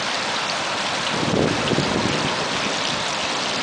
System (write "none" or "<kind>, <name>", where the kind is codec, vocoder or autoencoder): none